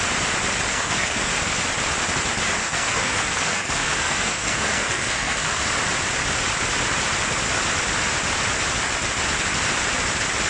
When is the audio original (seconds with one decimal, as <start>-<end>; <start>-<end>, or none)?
0.0-0.7; 1.3-2.6; 5.6-10.5